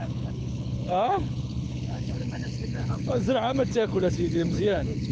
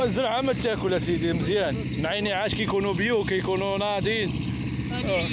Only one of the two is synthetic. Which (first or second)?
first